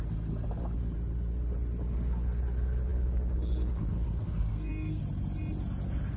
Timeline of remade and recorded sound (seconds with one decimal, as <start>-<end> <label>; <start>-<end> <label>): 0.0-4.5 recorded; 4.5-5.0 remade; 5.0-6.2 recorded